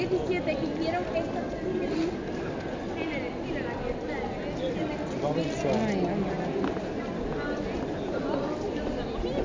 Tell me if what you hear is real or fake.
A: real